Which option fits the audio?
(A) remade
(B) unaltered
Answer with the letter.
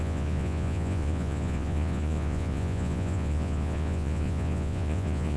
A